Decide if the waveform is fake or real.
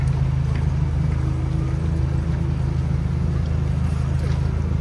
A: real